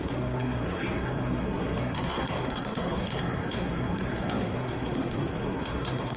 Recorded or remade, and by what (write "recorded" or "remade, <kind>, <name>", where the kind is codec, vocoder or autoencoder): remade, codec, SNAC